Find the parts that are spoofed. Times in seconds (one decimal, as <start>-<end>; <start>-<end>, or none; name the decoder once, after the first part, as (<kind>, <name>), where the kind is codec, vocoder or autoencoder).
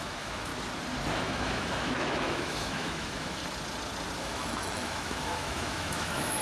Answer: 0.0-0.5 (autoencoder, DAC-VAE); 1.2-3.4; 4.2-6.4